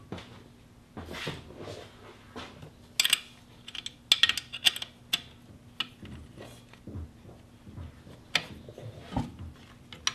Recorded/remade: recorded